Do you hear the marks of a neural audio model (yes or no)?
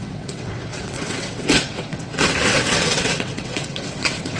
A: yes